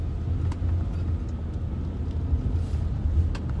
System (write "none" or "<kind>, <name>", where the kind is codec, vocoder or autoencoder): none